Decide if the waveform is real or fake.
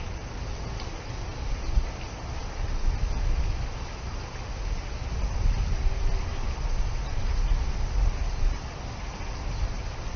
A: real